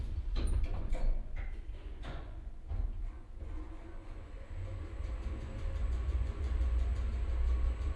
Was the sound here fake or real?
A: fake